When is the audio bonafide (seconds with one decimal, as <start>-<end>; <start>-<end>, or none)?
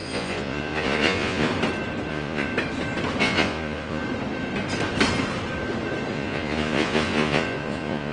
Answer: 1.5-2.1; 2.5-3.2; 4.0-6.1